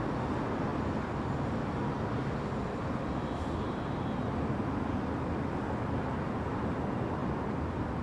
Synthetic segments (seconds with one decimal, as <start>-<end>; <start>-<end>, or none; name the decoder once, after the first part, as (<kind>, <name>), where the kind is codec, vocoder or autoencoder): none